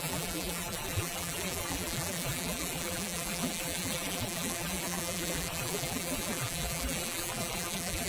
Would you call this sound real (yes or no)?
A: no